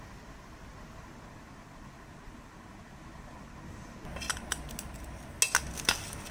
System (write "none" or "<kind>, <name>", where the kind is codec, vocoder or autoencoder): none